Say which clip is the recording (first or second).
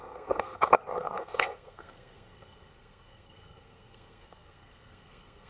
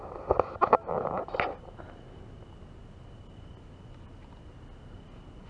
second